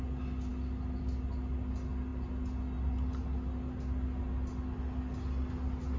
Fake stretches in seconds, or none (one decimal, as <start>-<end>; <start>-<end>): none